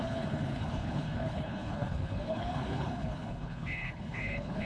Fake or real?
fake